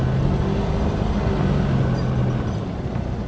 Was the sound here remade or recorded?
recorded